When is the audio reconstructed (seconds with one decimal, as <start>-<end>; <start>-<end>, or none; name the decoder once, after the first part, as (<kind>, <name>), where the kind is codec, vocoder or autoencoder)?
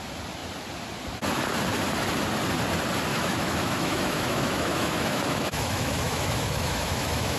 3.1-7.4 (autoencoder, DAC-VAE)